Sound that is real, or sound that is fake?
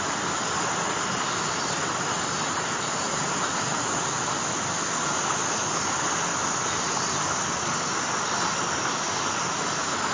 real